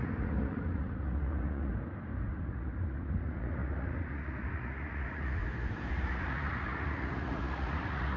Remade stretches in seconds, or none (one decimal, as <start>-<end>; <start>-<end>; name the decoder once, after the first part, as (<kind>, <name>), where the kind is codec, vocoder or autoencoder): 0.0-1.7 (vocoder, Vocos); 2.3-5.4; 5.9-8.2